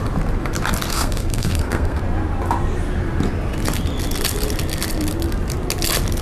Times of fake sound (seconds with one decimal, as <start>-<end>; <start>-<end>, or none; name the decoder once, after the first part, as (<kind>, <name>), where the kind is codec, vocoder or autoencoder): 0.9-2.0 (codec, SNAC)